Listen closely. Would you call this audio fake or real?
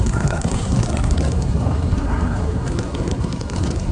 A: fake